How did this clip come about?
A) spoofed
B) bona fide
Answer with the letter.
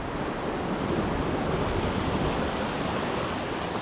B